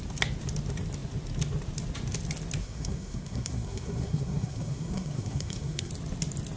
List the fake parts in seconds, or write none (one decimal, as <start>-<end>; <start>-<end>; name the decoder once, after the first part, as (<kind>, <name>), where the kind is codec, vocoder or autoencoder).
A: 2.6-5.9 (codec, SNAC)